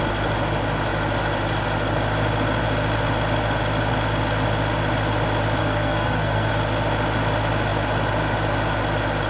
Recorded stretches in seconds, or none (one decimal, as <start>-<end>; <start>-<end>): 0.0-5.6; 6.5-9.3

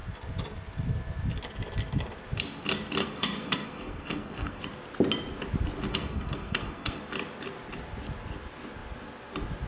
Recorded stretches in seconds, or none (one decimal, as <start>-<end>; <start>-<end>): 0.0-3.0; 4.6-5.9; 7.0-9.7

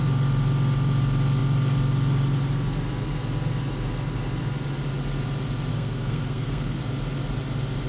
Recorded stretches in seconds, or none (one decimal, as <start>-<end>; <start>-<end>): 0.0-5.7; 6.8-7.9

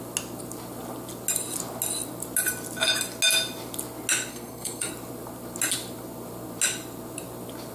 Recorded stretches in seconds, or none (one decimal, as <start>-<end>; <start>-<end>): 0.0-4.3; 4.9-7.7

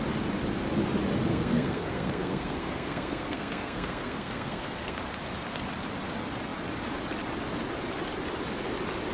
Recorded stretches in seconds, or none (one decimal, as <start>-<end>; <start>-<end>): 0.0-1.3; 5.0-9.1